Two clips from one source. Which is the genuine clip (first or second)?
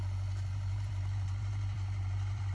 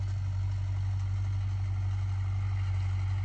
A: second